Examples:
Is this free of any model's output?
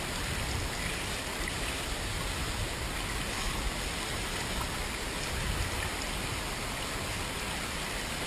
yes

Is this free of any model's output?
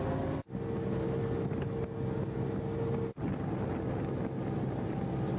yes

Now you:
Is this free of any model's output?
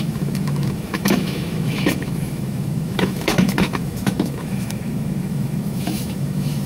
no